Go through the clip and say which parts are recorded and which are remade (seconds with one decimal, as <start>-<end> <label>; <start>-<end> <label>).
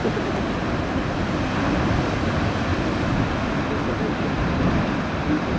0.0-1.8 recorded; 1.8-2.7 remade; 2.7-4.0 recorded; 4.0-5.6 remade